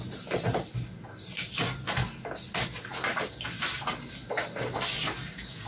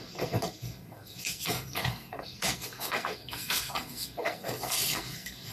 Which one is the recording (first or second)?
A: first